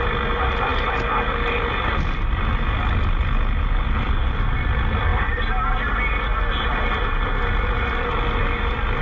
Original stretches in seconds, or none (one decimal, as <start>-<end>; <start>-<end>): 0.0-9.0